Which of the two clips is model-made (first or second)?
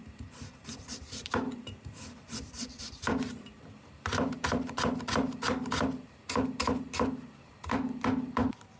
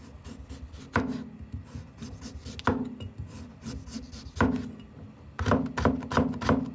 first